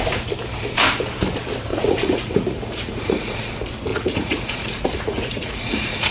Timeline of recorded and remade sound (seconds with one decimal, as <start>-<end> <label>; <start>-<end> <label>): 0.0-1.7 recorded; 1.7-3.5 remade; 3.5-3.9 recorded; 3.9-6.1 remade